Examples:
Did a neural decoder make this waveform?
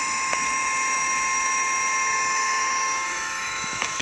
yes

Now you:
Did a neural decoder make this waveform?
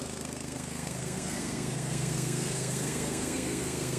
yes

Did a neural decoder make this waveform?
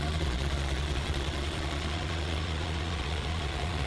yes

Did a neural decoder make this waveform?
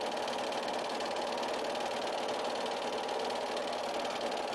no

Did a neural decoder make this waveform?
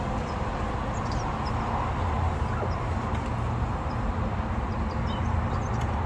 no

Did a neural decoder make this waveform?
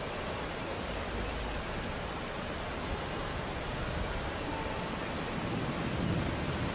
no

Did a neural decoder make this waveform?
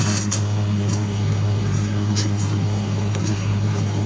yes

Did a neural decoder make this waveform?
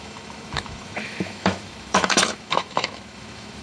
yes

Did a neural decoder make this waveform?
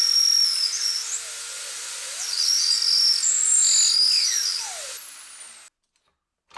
no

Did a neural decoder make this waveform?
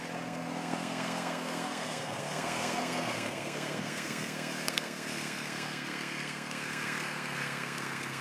yes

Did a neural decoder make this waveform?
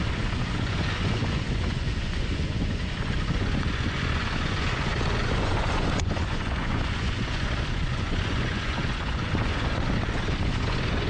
yes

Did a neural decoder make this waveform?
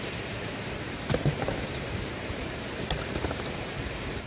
yes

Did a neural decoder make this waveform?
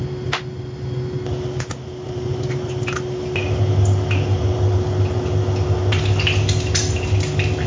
no